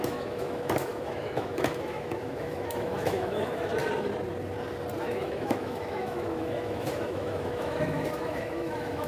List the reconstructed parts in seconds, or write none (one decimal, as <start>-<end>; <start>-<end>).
0.0-3.7; 5.0-9.1